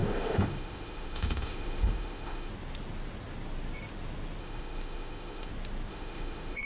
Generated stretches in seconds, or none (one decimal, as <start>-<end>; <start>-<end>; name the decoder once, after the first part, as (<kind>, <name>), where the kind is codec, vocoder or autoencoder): 0.0-2.5 (autoencoder, DAC-VAE); 4.4-5.5; 5.9-6.7